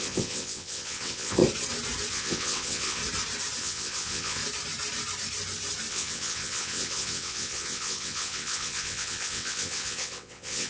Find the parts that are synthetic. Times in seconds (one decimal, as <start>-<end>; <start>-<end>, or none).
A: 0.0-1.4; 2.1-3.0; 3.6-4.4; 5.9-10.7